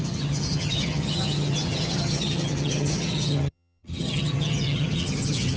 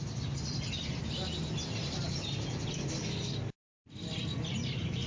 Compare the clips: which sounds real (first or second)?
second